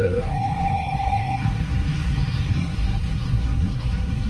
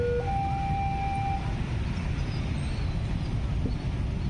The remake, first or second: first